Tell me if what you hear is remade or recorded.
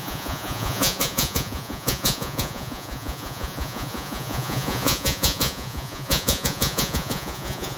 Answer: remade